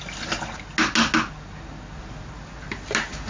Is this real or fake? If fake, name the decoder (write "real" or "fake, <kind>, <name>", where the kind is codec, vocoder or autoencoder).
real